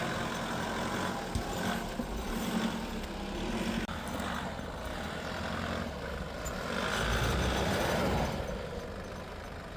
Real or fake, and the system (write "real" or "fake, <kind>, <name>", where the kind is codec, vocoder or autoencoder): real